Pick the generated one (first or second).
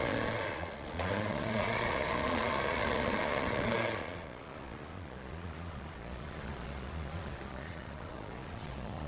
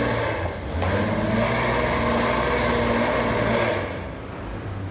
first